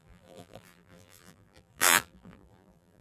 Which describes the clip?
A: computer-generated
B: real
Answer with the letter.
A